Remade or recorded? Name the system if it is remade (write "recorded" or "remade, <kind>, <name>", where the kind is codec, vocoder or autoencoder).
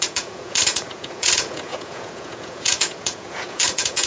remade, vocoder, Vocos